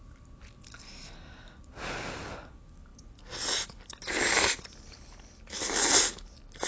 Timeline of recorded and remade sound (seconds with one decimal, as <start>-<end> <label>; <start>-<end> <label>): 0.0-6.7 recorded